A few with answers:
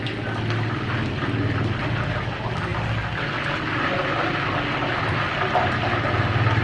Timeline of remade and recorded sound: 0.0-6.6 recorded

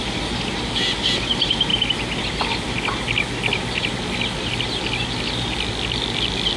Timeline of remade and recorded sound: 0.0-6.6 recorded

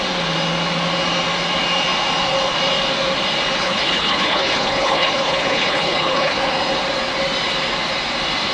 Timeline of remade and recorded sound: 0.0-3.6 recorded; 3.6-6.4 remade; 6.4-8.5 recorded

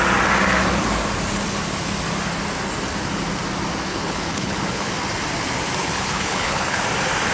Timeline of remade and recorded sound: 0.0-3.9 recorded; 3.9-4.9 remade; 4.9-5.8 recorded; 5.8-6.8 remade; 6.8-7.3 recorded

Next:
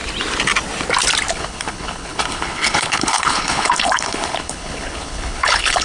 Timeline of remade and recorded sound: 0.0-1.3 recorded; 1.3-5.8 remade